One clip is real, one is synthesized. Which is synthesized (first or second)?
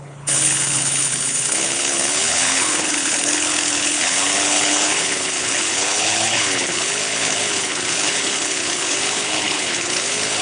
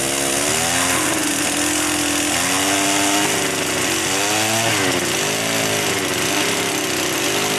first